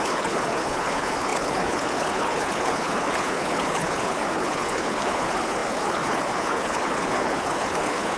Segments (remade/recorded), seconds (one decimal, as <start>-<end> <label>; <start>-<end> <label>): 0.0-8.2 remade